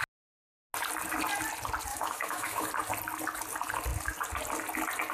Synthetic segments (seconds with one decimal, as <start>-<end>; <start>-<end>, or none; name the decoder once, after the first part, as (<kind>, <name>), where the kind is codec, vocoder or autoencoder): 1.9-2.7 (autoencoder, DAC-VAE)